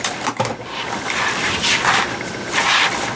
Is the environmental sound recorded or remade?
recorded